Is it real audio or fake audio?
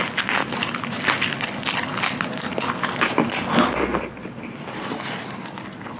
real